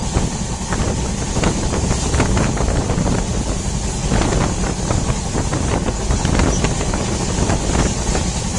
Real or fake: real